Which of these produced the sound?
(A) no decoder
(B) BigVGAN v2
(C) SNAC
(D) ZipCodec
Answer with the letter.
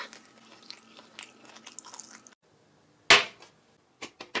A